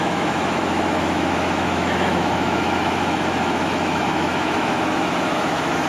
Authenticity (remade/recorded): remade